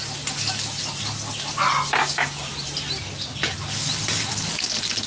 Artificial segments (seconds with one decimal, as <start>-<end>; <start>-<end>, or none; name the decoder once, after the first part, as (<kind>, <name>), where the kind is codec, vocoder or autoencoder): 2.0-2.5 (codec, DAC)